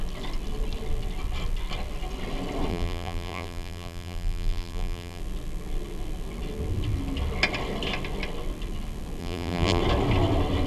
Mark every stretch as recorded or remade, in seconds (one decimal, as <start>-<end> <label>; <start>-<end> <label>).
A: 0.0-2.7 recorded; 2.7-5.2 remade; 5.2-9.2 recorded; 9.2-9.8 remade; 9.8-10.7 recorded